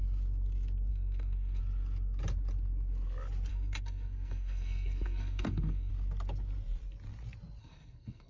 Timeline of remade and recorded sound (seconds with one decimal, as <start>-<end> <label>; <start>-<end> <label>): 0.0-0.9 recorded; 0.9-1.6 remade; 1.6-3.5 recorded; 3.5-5.9 remade; 5.9-7.6 recorded; 7.6-8.3 remade